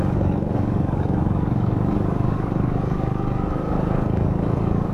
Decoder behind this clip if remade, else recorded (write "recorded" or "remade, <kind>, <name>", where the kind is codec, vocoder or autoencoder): remade, codec, DAC